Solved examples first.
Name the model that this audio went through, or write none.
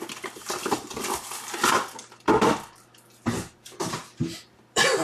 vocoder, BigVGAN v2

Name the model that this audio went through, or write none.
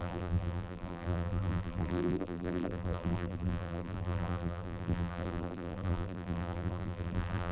vocoder, BigVGAN v2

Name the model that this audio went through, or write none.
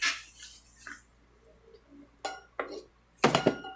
none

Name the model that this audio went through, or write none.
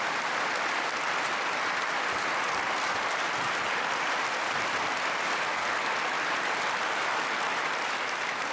vocoder, BigVGAN v2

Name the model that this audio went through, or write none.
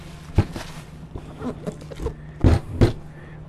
none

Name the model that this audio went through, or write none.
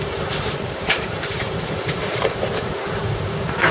vocoder, BigVGAN v2